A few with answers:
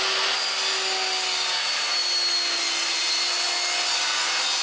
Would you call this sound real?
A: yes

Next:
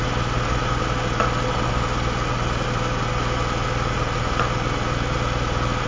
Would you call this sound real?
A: yes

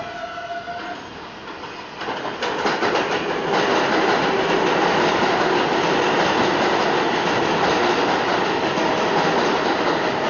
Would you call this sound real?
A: yes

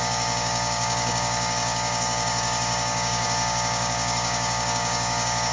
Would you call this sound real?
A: no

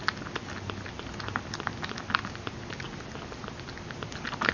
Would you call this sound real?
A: yes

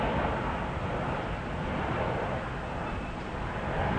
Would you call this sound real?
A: yes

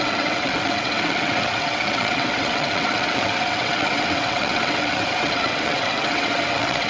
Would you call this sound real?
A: no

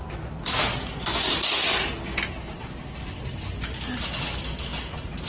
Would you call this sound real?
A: yes